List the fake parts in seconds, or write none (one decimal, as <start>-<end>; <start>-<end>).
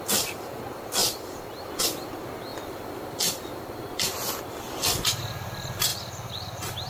1.0-1.7; 2.5-3.6; 5.9-6.9